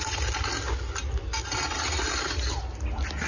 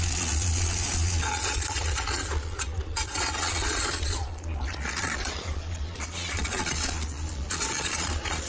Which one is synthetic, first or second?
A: second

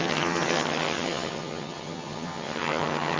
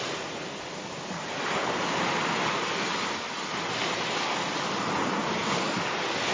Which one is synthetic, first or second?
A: first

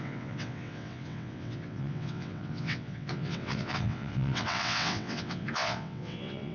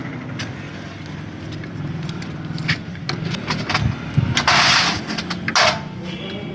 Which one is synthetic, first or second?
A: first